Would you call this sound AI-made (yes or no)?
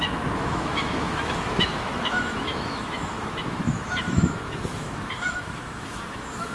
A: yes